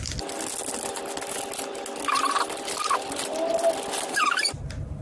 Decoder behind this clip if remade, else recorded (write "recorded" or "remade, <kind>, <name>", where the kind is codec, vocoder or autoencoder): recorded